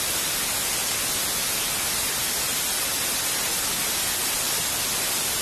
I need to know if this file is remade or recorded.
recorded